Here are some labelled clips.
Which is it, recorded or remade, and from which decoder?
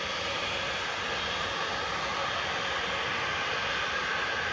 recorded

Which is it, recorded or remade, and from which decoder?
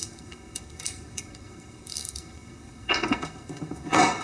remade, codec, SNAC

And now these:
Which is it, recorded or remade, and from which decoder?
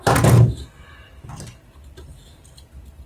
recorded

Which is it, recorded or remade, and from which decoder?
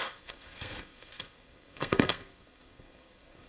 remade, codec, SNAC